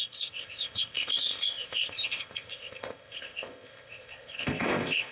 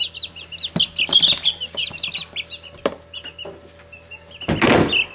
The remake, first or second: first